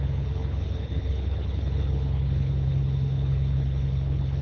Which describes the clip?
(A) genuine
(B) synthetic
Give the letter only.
B